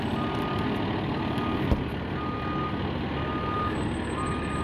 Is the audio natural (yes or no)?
yes